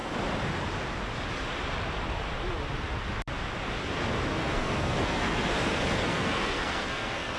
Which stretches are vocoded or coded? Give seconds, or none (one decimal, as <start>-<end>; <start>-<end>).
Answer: 4.3-7.4